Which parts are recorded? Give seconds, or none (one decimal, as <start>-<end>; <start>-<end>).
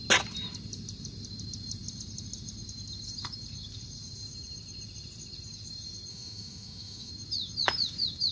0.0-6.1; 7.1-8.3